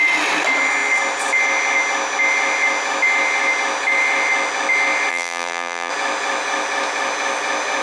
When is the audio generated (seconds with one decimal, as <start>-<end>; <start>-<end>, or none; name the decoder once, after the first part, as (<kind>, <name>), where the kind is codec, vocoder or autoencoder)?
5.1-5.9 (vocoder, BigVGAN v2)

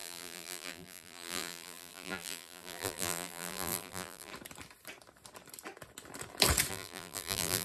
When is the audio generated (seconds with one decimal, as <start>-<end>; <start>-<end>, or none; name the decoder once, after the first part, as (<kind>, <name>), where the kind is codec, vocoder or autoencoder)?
0.0-4.3 (vocoder, BigVGAN v2); 6.7-7.6

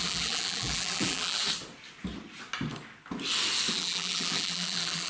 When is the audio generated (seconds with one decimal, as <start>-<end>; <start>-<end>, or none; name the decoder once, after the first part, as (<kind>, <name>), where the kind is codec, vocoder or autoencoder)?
0.0-1.4 (vocoder, BigVGAN v2); 3.7-5.1

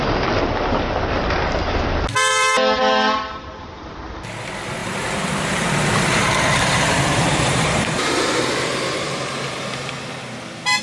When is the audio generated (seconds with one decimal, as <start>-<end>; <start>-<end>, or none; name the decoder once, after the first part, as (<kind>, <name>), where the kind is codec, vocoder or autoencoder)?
2.3-4.2 (vocoder, BigVGAN v2); 4.8-9.9

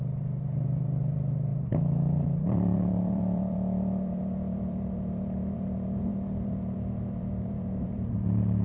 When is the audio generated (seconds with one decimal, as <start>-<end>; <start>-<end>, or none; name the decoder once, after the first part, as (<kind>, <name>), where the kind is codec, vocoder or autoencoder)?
0.0-8.6 (vocoder, BigVGAN v2)

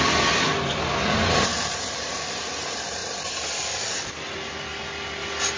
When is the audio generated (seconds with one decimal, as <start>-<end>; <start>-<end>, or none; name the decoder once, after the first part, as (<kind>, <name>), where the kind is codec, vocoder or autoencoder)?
1.5-2.1 (vocoder, BigVGAN v2)

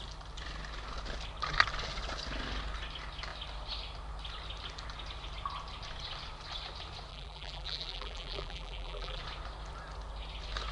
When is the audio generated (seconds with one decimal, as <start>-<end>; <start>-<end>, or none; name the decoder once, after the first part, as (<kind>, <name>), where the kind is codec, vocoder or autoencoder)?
7.1-9.2 (vocoder, BigVGAN v2)